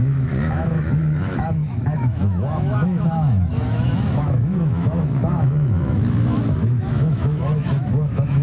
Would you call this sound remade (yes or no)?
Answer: yes